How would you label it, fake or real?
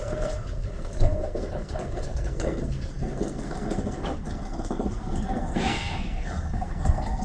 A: fake